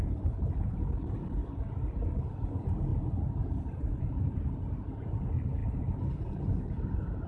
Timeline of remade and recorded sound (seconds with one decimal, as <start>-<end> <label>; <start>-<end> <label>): 0.0-5.6 recorded; 5.6-7.3 remade